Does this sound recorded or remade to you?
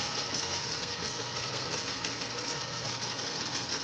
remade